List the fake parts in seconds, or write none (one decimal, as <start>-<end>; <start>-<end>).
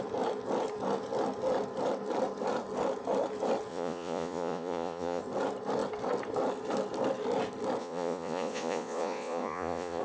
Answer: 3.7-5.2; 7.8-10.0